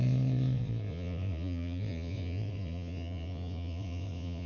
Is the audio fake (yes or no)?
yes